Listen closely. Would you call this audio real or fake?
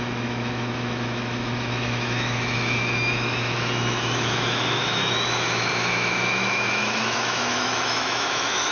fake